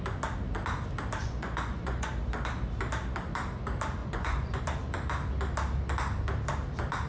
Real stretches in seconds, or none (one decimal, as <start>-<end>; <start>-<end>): 0.0-1.2; 2.1-4.0; 4.6-7.1